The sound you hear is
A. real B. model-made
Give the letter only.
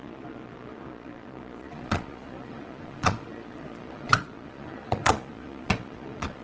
B